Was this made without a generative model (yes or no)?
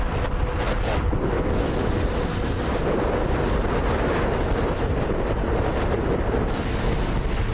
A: yes